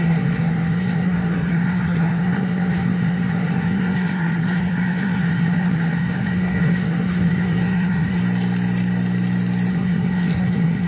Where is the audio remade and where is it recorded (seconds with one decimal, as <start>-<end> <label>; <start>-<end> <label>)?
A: 0.0-8.2 remade; 8.2-9.7 recorded; 9.7-10.9 remade